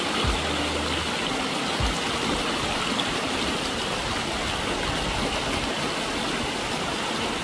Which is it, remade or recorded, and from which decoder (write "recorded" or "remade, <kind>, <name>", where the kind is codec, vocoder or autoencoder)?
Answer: recorded